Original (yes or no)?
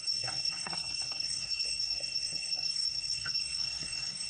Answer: no